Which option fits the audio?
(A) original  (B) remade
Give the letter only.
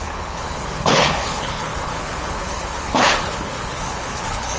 B